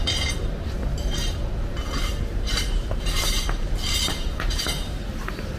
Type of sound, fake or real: fake